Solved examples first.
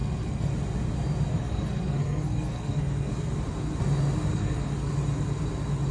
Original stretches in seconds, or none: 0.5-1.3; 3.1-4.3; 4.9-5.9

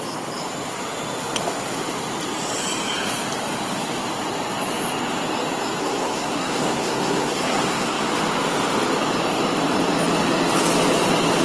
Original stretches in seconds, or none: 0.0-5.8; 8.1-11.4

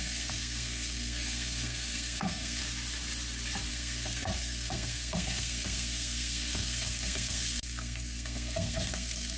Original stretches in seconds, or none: 2.6-3.7